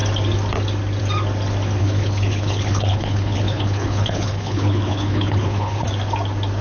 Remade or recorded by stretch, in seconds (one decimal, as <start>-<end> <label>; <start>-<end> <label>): 0.0-1.8 recorded; 1.8-5.8 remade; 5.8-6.6 recorded